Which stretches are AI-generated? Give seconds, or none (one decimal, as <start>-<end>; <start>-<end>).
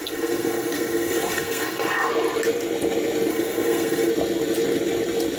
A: 0.0-2.1; 3.3-4.1